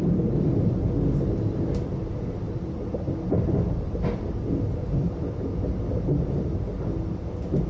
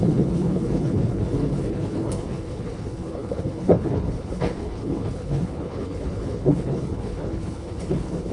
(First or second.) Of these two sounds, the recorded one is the first